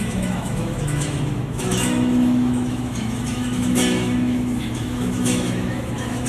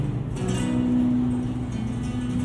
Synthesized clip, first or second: first